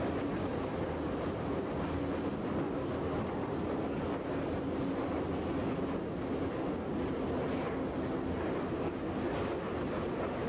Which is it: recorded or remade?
recorded